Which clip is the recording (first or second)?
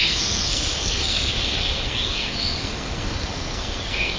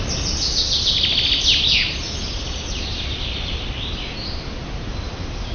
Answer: second